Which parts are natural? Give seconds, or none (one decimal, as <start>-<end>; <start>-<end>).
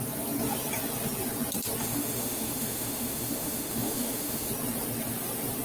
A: 0.0-1.8; 4.5-5.6